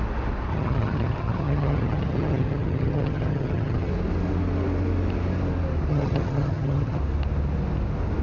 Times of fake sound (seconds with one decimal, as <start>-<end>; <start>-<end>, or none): 0.5-3.9; 5.9-7.0